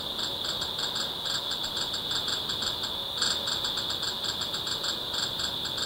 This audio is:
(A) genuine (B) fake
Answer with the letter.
A